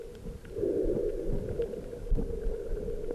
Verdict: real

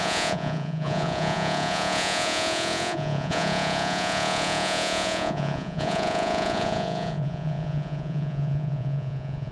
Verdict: fake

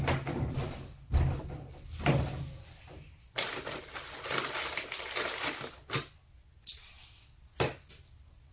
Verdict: real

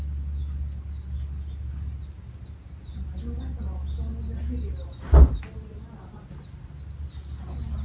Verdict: real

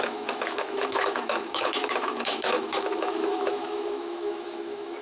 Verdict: fake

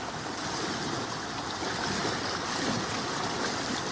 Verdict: real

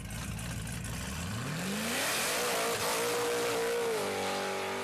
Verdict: real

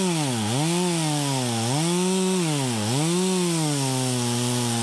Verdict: real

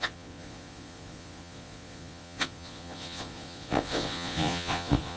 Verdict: fake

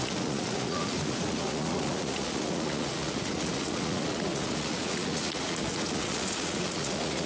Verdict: fake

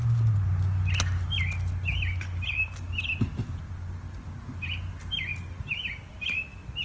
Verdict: real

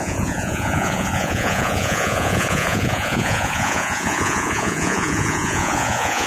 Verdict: fake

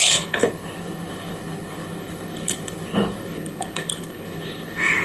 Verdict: fake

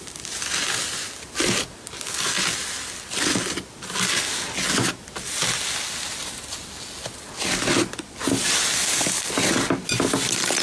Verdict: real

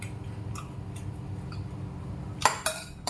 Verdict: fake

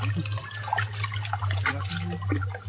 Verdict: real